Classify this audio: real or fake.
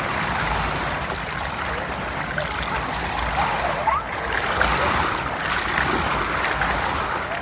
real